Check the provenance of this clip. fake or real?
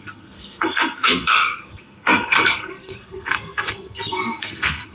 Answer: fake